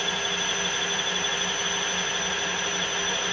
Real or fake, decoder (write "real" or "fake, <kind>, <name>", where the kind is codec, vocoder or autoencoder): real